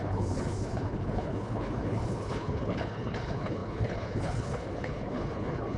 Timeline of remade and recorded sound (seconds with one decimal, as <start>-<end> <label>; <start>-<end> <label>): 0.0-5.8 remade